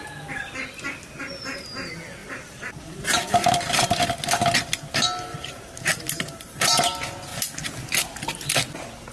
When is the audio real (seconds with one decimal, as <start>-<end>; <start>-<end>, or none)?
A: 0.0-2.2; 3.5-5.3; 6.8-9.1